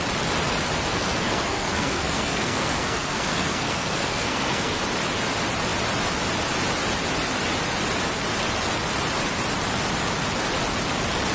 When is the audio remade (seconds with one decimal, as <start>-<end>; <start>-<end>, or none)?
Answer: 0.9-4.8